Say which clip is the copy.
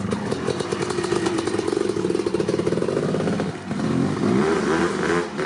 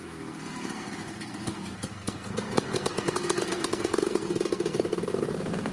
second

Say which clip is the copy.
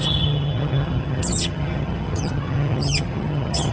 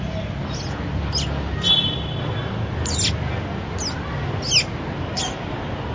first